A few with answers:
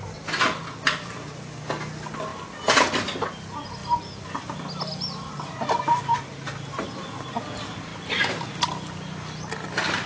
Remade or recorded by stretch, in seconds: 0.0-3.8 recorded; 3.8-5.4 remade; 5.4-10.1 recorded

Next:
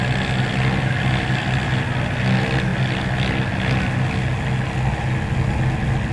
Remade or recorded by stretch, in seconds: 0.0-6.1 recorded